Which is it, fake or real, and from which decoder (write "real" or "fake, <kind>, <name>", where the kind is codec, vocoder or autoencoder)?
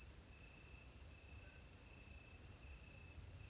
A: real